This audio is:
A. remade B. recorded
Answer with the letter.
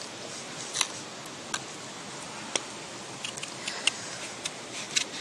B